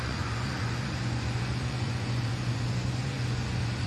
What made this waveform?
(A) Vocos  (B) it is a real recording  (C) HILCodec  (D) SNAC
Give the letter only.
A